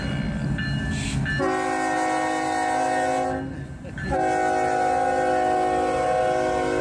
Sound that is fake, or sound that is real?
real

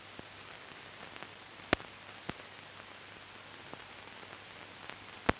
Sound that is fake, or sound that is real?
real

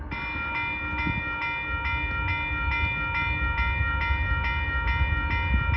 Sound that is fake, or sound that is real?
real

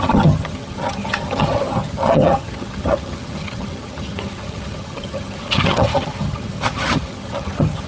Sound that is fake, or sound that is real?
fake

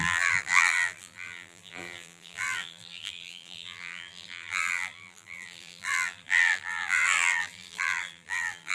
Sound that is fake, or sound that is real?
fake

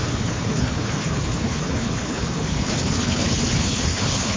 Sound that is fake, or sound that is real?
fake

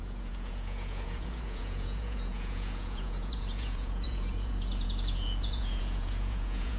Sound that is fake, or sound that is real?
fake